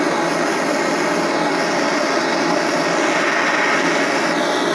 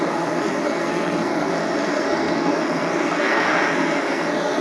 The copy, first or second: second